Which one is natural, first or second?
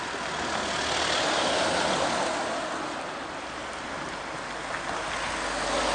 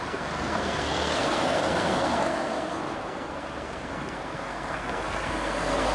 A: first